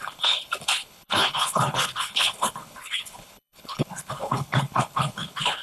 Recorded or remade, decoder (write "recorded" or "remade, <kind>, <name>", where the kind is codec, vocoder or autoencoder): remade, codec, HILCodec